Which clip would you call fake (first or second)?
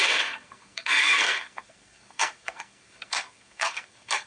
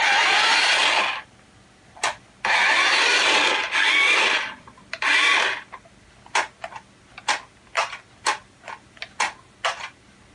first